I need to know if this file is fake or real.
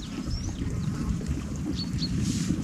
fake